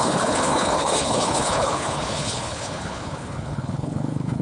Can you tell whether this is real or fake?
fake